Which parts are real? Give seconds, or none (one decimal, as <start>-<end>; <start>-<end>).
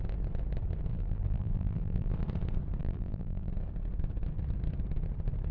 0.0-0.9; 2.1-2.8; 3.5-5.5